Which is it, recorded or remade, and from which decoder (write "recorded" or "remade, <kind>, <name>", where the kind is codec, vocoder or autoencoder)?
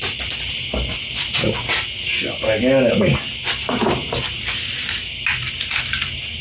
recorded